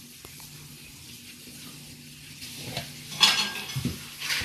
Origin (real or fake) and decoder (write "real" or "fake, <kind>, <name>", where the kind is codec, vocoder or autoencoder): real